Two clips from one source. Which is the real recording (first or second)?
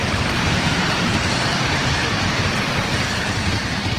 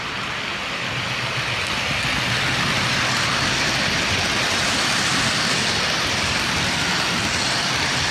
second